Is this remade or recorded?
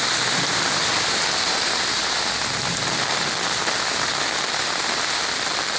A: recorded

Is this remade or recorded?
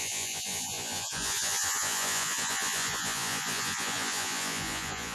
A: remade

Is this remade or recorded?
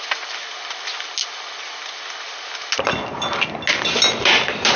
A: recorded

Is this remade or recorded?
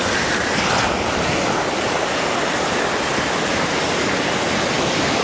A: recorded